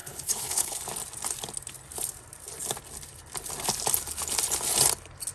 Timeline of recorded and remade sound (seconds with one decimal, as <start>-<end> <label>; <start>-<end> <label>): 0.0-0.8 remade; 0.8-5.3 recorded